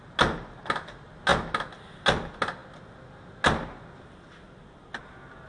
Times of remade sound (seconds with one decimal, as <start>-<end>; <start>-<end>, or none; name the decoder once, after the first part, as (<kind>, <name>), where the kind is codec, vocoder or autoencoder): none